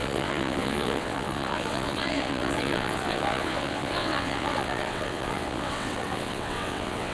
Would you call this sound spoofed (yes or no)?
yes